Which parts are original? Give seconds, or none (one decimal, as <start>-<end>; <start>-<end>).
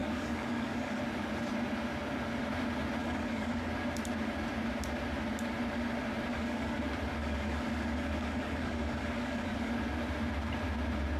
1.0-3.0; 3.7-6.3; 6.8-7.2; 9.7-11.2